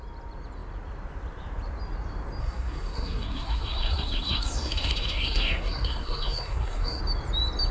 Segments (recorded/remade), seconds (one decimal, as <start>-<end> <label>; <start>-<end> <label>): 0.0-2.4 recorded; 2.4-7.0 remade; 7.0-7.7 recorded